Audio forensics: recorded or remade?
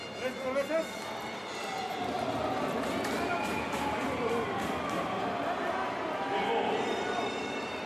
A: recorded